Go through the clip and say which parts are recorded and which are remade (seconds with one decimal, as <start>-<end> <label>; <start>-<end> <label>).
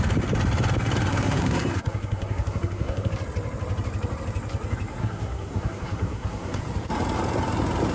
0.0-1.1 recorded; 1.1-3.1 remade; 3.1-5.0 recorded; 5.0-6.6 remade; 6.6-7.9 recorded